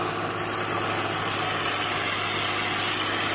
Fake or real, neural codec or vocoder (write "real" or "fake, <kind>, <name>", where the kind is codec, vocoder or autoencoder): real